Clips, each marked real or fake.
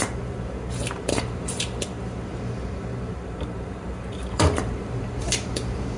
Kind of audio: fake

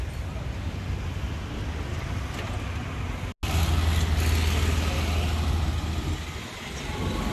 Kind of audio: real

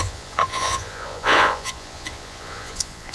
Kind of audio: fake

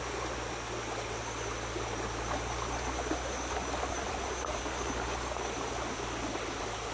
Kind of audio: real